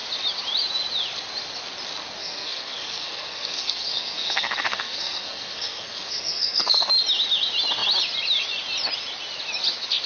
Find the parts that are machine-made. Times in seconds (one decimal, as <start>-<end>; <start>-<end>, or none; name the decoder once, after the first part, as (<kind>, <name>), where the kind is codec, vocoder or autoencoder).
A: 2.2-6.9 (codec, SNAC)

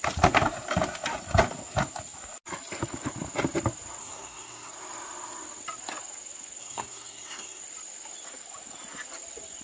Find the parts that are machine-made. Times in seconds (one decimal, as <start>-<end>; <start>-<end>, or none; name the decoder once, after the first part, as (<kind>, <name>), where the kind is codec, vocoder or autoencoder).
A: 4.0-4.7 (codec, SNAC); 6.6-7.6

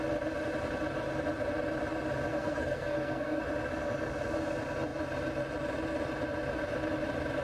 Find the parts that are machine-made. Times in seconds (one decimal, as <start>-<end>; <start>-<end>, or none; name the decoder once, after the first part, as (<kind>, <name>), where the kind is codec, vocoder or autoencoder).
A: 2.3-3.4 (codec, SNAC)

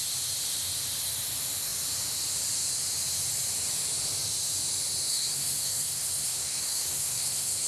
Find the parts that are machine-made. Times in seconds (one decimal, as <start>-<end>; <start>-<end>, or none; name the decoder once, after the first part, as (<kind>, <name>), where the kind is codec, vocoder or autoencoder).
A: 5.1-7.7 (codec, SNAC)

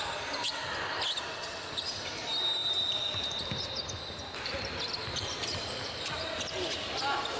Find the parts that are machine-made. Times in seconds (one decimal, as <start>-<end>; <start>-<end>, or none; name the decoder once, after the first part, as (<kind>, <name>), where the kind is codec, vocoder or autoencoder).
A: none